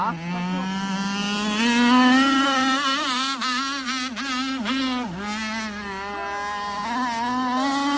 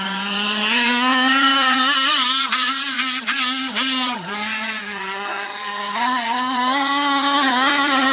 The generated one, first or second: second